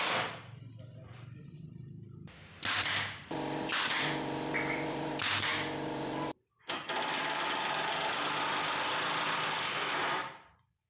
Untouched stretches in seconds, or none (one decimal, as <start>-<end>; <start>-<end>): 5.1-5.5; 6.6-10.9